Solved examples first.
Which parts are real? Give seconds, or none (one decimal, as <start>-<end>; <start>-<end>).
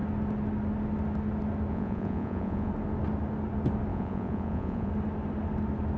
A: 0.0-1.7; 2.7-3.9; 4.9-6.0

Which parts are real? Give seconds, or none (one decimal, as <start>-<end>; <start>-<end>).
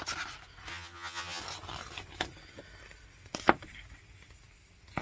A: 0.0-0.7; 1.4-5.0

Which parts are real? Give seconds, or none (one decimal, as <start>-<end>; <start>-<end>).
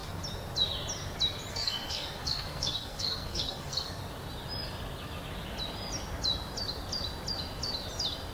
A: 0.0-1.5; 4.0-8.3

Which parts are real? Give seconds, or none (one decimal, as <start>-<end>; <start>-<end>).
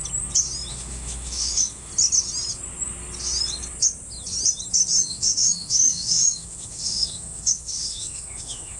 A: 0.0-0.7; 1.9-5.0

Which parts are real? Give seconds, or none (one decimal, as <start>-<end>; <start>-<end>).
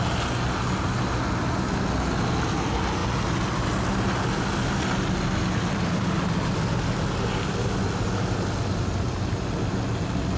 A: 0.0-10.4